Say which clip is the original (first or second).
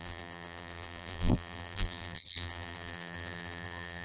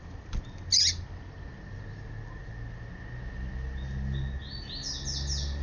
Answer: second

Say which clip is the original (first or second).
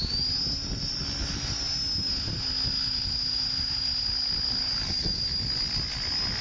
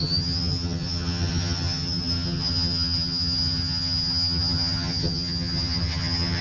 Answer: first